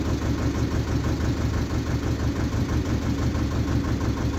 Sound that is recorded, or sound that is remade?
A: recorded